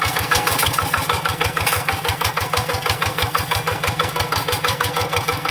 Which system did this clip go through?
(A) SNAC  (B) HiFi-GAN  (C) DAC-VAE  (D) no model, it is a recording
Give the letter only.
A